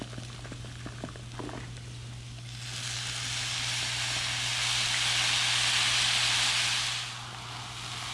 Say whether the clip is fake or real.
real